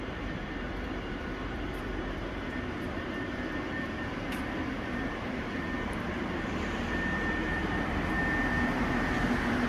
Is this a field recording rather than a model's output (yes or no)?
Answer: no